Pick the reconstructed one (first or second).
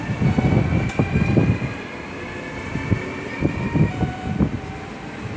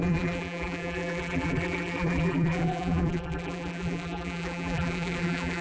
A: second